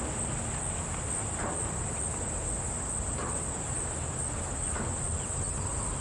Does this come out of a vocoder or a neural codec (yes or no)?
no